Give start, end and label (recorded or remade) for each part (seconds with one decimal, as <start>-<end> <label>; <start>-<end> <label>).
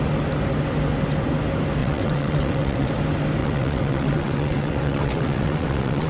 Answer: 0.0-1.8 recorded; 1.8-2.9 remade; 2.9-3.4 recorded; 3.4-6.1 remade